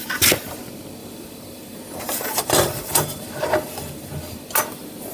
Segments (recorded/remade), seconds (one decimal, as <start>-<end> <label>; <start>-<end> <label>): 0.0-1.0 recorded; 1.0-4.1 remade; 4.1-5.1 recorded